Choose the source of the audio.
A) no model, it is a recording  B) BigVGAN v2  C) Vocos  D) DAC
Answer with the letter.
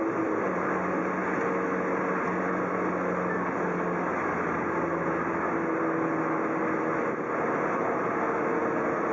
A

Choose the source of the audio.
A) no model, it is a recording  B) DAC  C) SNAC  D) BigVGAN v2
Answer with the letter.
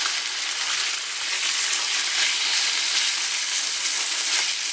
A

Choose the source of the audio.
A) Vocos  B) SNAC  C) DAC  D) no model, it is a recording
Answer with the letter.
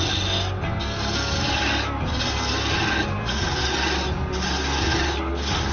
D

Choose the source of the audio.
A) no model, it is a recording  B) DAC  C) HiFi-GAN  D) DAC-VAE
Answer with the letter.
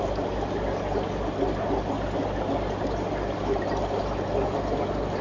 A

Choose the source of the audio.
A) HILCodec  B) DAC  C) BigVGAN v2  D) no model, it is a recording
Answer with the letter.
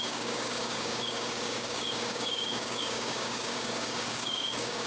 B